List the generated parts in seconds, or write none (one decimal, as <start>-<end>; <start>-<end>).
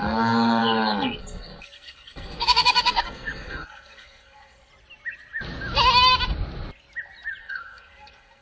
0.0-4.7; 7.4-8.4